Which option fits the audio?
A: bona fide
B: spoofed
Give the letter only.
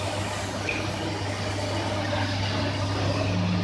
A